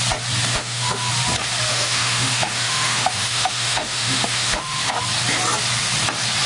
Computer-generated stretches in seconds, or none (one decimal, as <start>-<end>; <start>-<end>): 0.5-1.1; 1.7-4.9